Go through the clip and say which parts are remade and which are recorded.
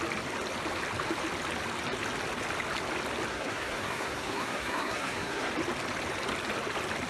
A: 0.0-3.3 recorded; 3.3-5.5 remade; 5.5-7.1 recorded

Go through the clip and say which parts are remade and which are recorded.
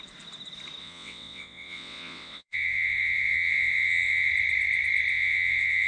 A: 0.0-0.8 recorded; 0.8-4.3 remade; 4.3-5.1 recorded; 5.1-5.9 remade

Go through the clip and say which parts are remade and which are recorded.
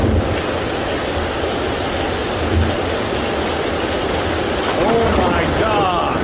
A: 0.0-6.2 recorded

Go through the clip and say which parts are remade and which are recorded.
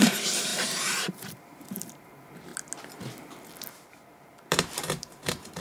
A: 0.0-2.5 remade; 2.5-3.7 recorded; 3.7-5.6 remade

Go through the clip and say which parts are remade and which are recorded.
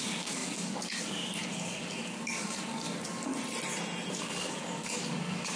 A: 0.0-3.3 remade; 3.3-4.1 recorded; 4.1-5.6 remade